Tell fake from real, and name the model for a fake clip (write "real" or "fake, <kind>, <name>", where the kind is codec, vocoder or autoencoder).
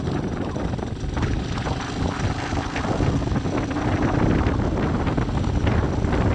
real